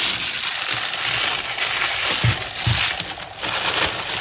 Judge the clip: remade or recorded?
recorded